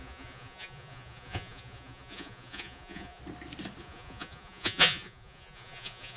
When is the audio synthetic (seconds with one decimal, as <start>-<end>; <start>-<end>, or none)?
0.0-3.2; 3.8-6.2